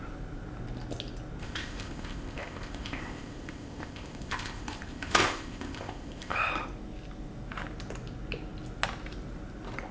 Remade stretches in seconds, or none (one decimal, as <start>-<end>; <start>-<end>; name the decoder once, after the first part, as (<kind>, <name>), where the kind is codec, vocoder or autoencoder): 1.4-6.5 (codec, ZipCodec)